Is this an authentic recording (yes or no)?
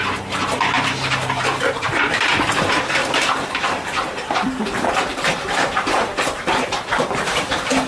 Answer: no